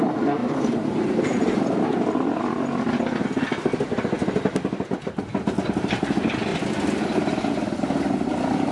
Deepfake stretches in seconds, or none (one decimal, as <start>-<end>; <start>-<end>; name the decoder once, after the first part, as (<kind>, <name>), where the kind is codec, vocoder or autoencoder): 0.4-2.4 (vocoder, BigVGAN v2)